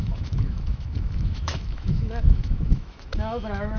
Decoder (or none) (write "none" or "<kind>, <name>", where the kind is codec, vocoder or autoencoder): autoencoder, DAC-VAE